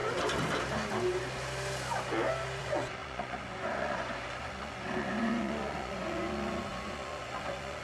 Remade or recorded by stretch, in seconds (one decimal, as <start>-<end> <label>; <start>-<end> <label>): 0.0-2.6 recorded; 2.6-7.8 remade

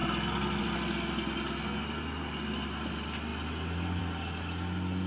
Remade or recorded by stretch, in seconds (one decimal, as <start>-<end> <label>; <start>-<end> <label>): 0.0-5.1 recorded

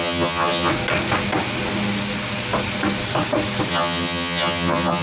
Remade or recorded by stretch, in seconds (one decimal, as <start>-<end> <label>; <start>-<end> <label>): 0.0-0.7 remade; 0.7-3.7 recorded; 3.7-5.0 remade